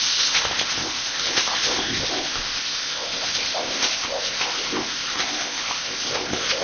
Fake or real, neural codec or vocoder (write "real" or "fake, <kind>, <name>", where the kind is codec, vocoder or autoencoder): fake, codec, ZipCodec